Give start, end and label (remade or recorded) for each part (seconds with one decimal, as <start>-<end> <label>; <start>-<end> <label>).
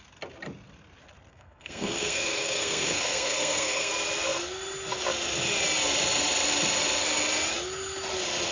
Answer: 0.0-1.3 recorded; 1.3-3.9 remade; 3.9-8.5 recorded